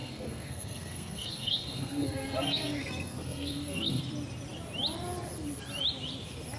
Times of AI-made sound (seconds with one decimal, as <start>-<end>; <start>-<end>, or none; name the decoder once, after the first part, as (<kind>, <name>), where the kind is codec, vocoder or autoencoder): 0.0-4.0 (codec, SNAC)